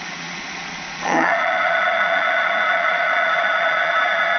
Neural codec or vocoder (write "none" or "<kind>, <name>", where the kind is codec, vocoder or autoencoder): vocoder, Vocos